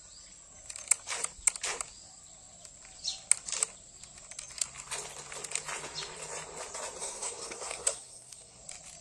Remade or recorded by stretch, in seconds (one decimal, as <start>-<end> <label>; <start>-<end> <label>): 0.0-7.0 recorded; 7.0-8.6 remade; 8.6-9.0 recorded